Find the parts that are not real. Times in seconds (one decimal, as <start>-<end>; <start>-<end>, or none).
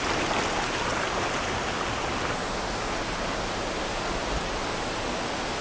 none